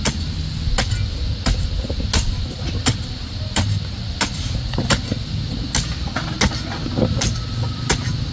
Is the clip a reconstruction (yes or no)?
no